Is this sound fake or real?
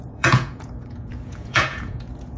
fake